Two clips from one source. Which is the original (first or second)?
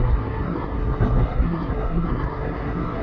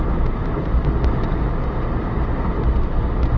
second